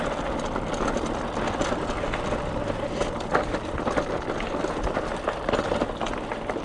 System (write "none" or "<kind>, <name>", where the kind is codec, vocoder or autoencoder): none